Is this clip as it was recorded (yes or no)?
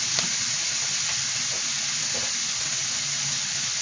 yes